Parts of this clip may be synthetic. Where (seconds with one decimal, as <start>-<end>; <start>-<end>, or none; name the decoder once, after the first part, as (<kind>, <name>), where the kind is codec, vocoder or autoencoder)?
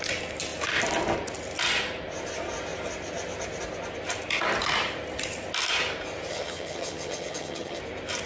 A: 6.3-7.8 (vocoder, HiFi-GAN)